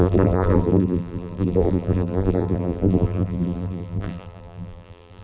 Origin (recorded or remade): remade